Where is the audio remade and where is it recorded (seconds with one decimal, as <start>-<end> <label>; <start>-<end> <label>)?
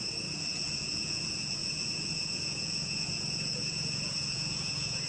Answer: 0.0-5.1 remade